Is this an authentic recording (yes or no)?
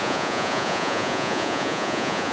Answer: no